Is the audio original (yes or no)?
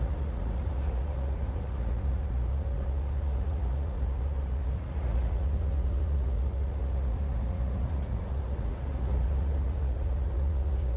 no